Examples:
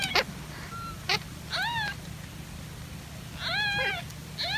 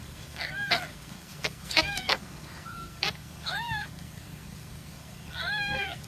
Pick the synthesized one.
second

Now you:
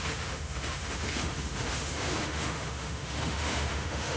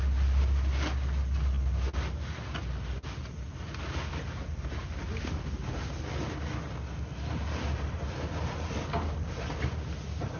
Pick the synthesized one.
first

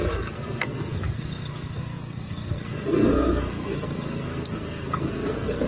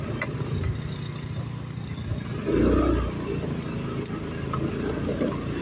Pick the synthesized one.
first